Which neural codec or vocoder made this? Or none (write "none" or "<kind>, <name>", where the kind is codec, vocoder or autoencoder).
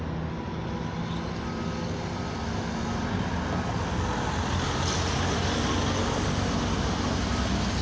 none